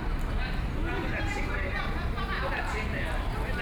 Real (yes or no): no